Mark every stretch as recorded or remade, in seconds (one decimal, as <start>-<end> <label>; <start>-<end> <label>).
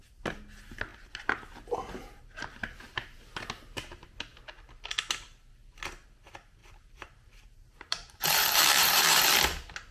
0.0-6.6 recorded; 6.6-9.2 remade; 9.2-9.9 recorded